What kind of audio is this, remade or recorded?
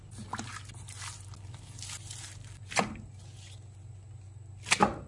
recorded